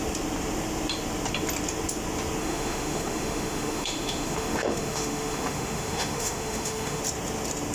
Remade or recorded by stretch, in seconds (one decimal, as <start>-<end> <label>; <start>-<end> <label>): 0.0-2.4 recorded; 2.4-7.0 remade; 7.0-7.7 recorded